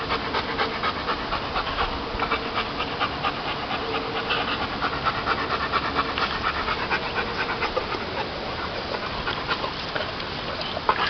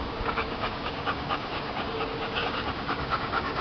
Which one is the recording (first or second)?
first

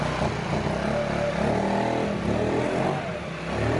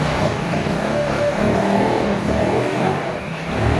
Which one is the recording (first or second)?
first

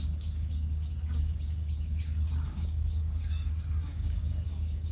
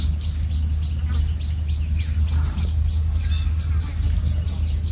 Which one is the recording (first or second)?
second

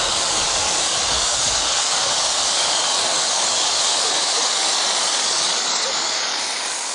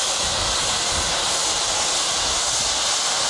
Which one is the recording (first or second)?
second